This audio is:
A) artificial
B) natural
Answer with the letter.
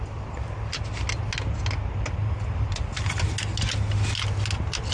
B